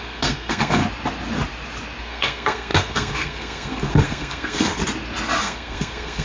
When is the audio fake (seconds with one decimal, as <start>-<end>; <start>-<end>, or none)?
0.0-0.8; 2.0-4.8; 5.4-6.2